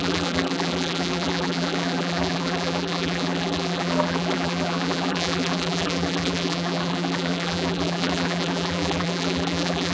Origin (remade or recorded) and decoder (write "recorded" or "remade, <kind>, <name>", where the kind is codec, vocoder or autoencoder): remade, vocoder, BigVGAN v2